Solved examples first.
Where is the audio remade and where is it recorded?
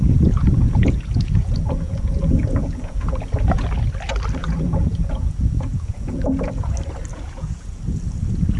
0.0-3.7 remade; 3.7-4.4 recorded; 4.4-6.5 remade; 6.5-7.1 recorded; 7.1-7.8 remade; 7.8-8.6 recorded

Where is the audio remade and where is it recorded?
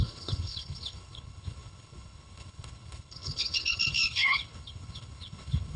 0.0-5.8 remade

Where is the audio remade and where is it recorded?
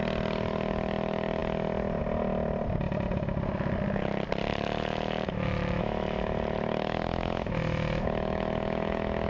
0.0-4.5 recorded; 4.5-9.3 remade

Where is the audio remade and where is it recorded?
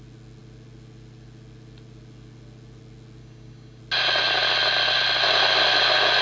0.0-3.2 recorded; 3.2-3.8 remade; 3.8-6.2 recorded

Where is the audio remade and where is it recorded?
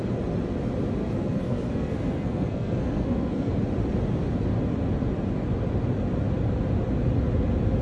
0.0-1.0 recorded; 1.0-3.5 remade; 3.5-7.8 recorded